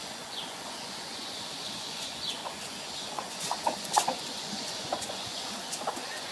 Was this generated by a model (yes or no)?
yes